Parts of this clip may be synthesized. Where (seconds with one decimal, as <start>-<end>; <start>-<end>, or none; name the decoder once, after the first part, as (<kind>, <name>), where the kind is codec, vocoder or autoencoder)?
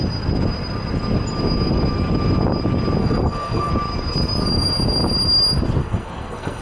3.0-3.7 (codec, SNAC); 5.8-6.6